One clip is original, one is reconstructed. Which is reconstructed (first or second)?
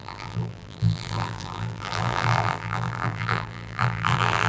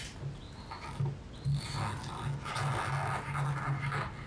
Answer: first